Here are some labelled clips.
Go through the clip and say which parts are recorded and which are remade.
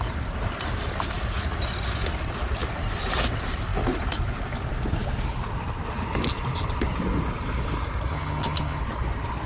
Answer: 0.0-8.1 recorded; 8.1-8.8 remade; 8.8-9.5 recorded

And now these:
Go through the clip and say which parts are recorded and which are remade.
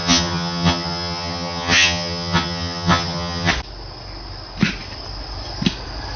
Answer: 0.0-3.5 remade; 3.5-6.2 recorded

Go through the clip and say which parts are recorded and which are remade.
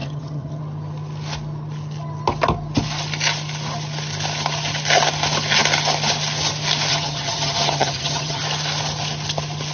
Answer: 0.0-0.6 remade; 0.6-6.9 recorded; 6.9-8.4 remade; 8.4-9.7 recorded